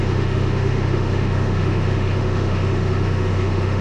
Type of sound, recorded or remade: remade